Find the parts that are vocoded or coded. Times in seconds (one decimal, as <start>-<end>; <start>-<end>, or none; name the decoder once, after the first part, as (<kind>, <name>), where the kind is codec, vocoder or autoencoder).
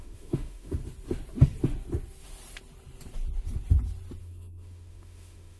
0.0-0.8 (autoencoder, DAC-VAE); 4.2-5.6